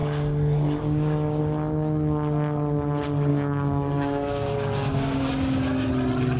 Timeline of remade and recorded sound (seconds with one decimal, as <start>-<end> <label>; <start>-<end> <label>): 0.0-1.4 remade; 1.4-3.3 recorded; 3.3-5.9 remade; 5.9-6.4 recorded